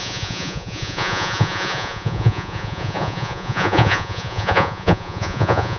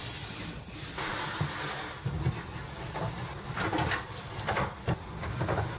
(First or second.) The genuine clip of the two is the second